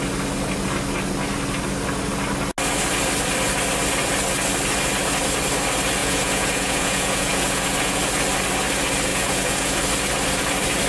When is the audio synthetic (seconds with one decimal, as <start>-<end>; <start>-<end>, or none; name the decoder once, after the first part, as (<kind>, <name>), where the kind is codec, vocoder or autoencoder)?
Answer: 6.0-8.0 (vocoder, Vocos); 9.1-9.8